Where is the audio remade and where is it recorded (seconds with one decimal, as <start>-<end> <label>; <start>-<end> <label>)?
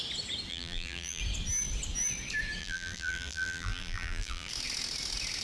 0.0-0.5 recorded; 0.5-1.2 remade; 1.2-2.6 recorded; 2.6-4.5 remade; 4.5-5.4 recorded